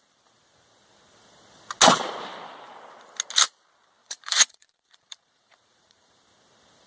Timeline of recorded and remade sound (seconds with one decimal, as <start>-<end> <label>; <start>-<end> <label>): 0.0-4.0 recorded; 4.0-6.2 remade; 6.2-6.9 recorded